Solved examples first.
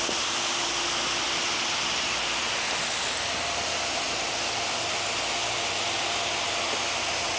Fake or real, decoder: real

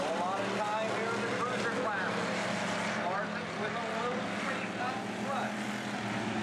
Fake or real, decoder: real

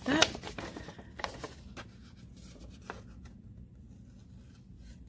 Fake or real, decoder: real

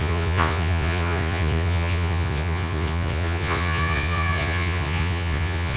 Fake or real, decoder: fake, vocoder, Vocos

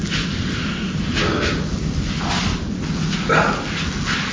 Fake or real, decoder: real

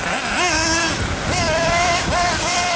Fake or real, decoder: real